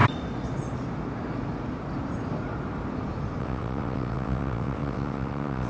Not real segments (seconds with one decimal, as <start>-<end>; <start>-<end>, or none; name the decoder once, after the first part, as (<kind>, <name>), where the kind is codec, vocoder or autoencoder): 3.4-5.7 (vocoder, WaveNeXt)